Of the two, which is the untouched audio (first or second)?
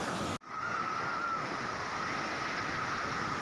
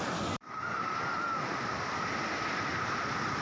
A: first